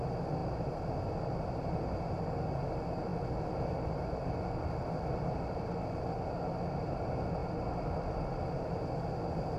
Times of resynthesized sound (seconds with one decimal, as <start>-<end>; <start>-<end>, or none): none